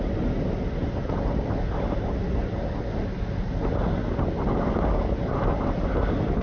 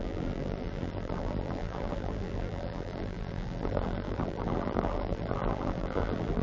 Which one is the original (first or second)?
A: first